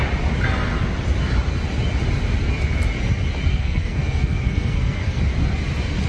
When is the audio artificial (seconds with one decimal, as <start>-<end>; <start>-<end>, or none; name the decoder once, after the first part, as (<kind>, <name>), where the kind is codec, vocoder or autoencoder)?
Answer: 3.5-5.2 (codec, SNAC)